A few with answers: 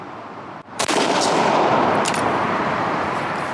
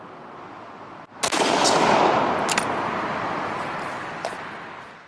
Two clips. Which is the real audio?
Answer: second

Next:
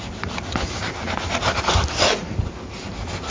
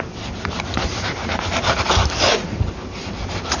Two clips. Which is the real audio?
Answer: first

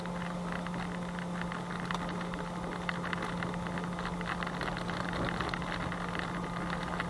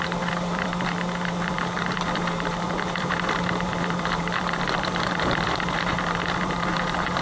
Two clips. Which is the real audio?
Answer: first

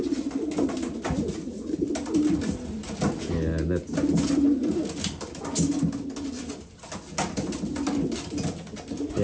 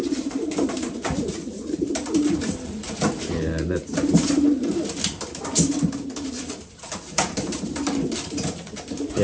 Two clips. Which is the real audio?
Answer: first